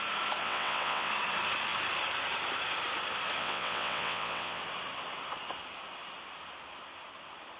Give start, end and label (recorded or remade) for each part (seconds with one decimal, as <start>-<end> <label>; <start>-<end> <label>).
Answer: 0.0-0.4 recorded; 0.4-1.1 remade; 1.1-3.4 recorded; 3.4-4.6 remade; 4.6-7.6 recorded

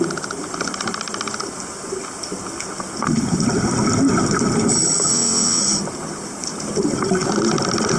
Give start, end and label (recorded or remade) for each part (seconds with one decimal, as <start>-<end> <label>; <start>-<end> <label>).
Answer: 0.0-5.1 recorded; 5.1-5.6 remade; 5.6-8.0 recorded